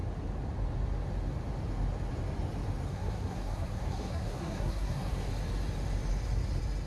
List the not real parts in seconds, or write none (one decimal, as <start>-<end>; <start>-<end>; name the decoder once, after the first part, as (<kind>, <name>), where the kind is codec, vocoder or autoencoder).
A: 2.9-5.3 (codec, SNAC)